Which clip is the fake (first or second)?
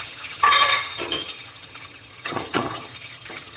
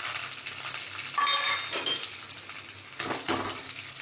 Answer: first